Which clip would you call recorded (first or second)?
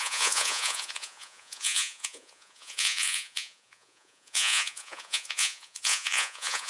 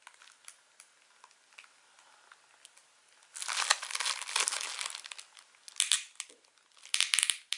second